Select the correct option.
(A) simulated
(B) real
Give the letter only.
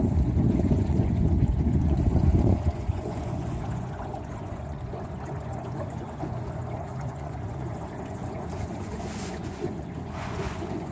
A